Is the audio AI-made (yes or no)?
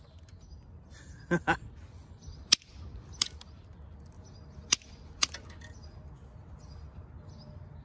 no